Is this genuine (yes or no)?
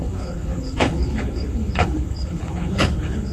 no